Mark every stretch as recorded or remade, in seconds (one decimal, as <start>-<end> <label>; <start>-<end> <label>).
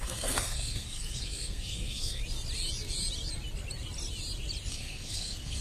0.0-2.2 remade; 2.2-4.7 recorded; 4.7-5.6 remade